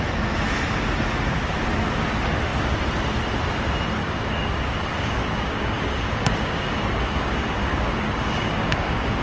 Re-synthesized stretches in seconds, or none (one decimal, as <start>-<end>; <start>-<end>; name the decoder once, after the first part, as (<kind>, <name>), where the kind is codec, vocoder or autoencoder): 4.0-9.2 (codec, DAC)